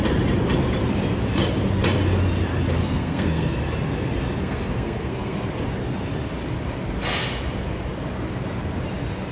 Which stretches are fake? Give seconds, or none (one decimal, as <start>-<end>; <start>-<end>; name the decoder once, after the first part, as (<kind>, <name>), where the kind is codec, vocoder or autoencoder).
2.8-3.6 (codec, SNAC); 4.4-5.5